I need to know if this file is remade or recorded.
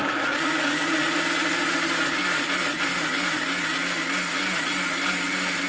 recorded